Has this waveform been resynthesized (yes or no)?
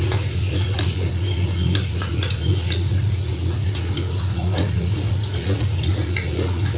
yes